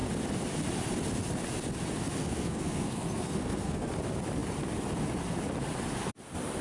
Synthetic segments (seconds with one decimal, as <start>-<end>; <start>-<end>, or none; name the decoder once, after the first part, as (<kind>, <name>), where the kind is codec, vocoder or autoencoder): 2.2-3.9 (codec, SNAC)